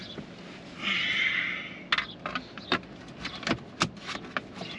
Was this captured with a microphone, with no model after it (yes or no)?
yes